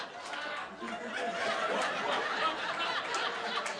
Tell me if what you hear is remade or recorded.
recorded